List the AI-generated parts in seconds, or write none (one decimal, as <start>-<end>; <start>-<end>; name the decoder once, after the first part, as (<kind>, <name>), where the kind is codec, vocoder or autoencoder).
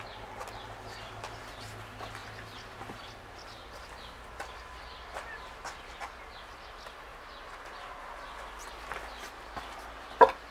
none